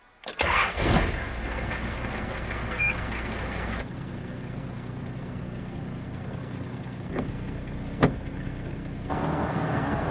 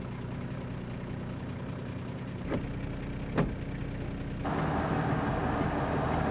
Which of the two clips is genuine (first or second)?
second